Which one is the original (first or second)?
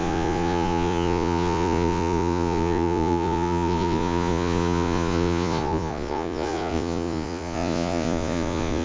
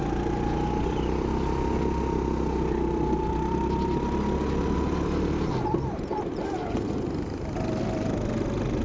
second